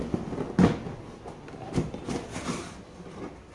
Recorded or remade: recorded